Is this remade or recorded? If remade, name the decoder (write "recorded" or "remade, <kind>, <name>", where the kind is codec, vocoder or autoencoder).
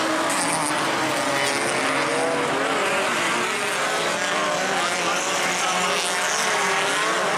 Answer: recorded